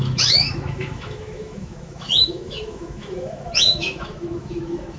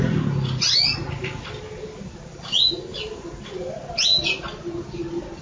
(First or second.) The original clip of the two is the second